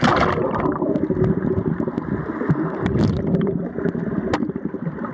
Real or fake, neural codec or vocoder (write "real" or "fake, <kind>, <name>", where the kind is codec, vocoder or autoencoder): real